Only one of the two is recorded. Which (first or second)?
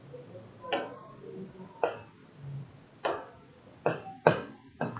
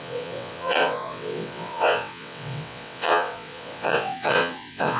first